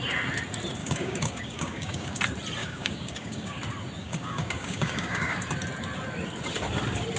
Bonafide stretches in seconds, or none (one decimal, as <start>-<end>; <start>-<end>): 0.0-0.8; 2.2-2.6; 3.6-4.0; 5.4-7.2